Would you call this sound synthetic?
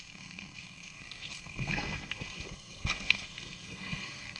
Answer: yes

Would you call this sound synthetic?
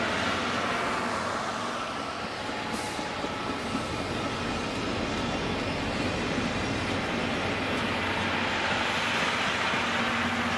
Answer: no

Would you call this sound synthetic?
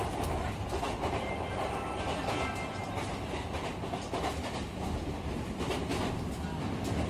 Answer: no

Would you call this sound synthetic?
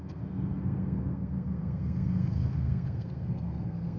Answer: yes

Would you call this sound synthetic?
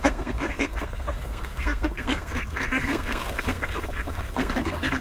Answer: yes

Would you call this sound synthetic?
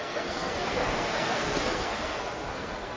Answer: yes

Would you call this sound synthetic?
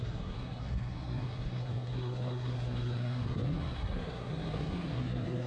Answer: yes